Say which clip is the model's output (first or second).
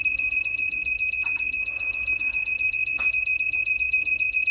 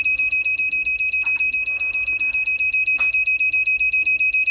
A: first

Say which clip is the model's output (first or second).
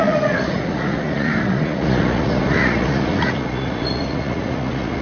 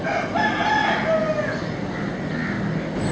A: first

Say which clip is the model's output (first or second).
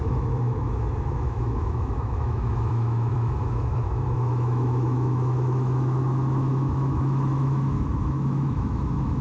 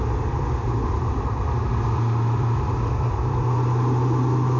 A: first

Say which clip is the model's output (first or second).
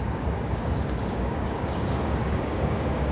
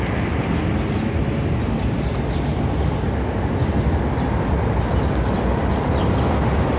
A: first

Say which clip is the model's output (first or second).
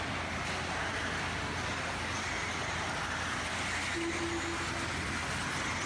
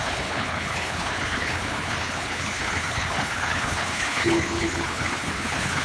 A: second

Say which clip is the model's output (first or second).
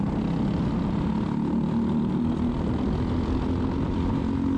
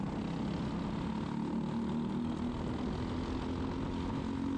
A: first